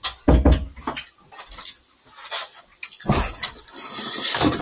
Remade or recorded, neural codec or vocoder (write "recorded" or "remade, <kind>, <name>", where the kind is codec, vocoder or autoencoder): recorded